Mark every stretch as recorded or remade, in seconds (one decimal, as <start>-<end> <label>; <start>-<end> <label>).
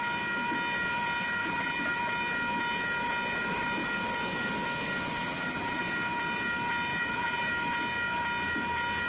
0.0-1.4 recorded; 1.4-2.0 remade; 2.0-5.2 recorded; 5.2-5.8 remade; 5.8-6.9 recorded; 6.9-7.5 remade; 7.5-9.1 recorded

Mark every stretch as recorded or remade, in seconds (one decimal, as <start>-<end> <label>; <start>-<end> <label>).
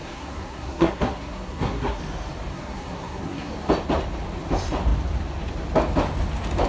0.0-2.0 remade; 2.0-2.5 recorded; 2.5-3.5 remade; 3.5-6.7 recorded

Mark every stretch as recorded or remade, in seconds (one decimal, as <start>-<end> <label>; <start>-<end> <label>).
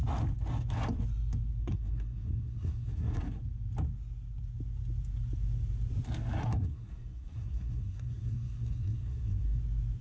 0.0-1.6 recorded; 1.6-3.4 remade; 3.4-6.4 recorded; 6.4-9.6 remade; 9.6-10.0 recorded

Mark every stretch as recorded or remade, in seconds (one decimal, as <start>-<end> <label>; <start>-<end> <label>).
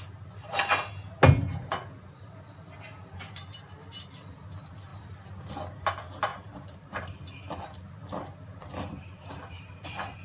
0.0-6.3 recorded; 6.3-7.2 remade; 7.2-10.2 recorded